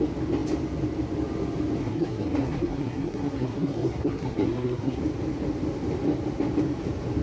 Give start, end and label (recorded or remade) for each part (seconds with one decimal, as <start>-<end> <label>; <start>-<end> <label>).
0.0-1.8 recorded; 1.8-5.0 remade; 5.0-7.2 recorded